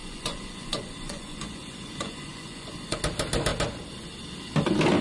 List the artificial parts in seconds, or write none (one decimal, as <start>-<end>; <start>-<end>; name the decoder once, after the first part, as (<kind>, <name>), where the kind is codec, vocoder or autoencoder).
0.0-3.0 (vocoder, Vocos)